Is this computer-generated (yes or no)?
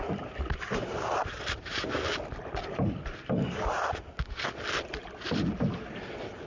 no